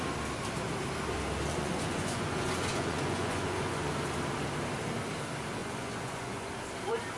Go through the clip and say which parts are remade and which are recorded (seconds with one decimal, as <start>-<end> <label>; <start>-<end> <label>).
0.0-1.5 recorded; 1.5-3.9 remade; 3.9-5.6 recorded; 5.6-6.5 remade; 6.5-7.2 recorded

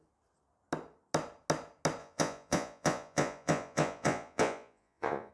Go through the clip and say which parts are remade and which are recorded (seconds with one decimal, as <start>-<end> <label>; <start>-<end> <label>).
0.0-2.0 recorded; 2.0-5.3 remade